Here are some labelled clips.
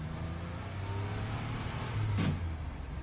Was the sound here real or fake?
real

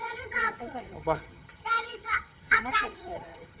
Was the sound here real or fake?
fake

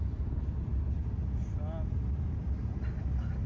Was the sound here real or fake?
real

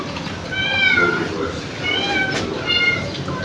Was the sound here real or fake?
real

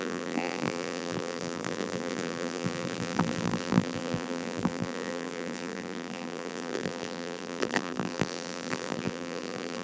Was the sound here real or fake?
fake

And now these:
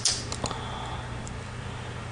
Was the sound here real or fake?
real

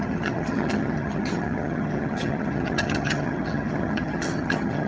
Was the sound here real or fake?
fake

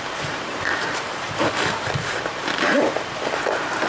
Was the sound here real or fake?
fake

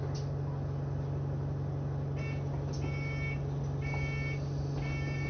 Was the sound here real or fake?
real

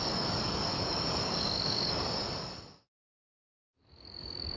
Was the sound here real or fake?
fake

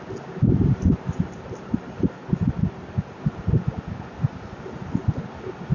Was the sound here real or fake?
real